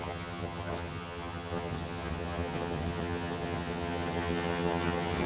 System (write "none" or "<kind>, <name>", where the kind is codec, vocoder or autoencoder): vocoder, HiFi-GAN